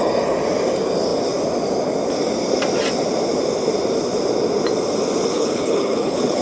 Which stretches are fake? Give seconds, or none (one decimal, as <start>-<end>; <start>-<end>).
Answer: 5.3-6.4